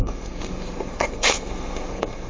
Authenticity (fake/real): fake